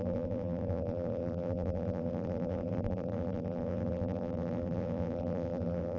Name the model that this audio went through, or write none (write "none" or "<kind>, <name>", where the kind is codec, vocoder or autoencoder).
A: vocoder, BigVGAN v2